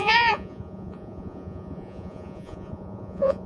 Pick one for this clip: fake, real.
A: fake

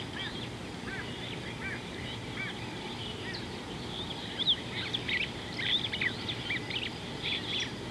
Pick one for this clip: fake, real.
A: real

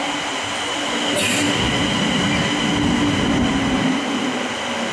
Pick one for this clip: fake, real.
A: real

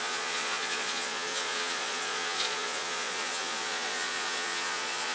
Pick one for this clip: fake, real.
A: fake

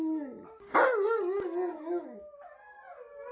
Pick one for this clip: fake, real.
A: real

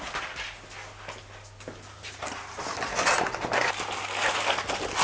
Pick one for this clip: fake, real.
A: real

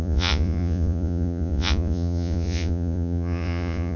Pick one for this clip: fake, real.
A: fake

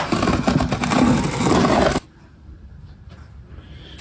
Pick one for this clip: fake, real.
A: real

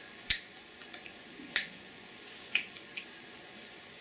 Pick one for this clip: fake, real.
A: fake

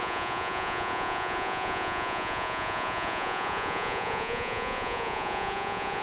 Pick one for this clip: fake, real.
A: fake